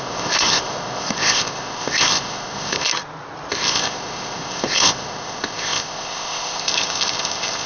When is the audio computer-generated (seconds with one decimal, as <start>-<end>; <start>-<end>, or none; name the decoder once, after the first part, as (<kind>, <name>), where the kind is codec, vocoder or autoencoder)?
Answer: 0.0-2.9 (codec, ZipCodec); 3.5-7.7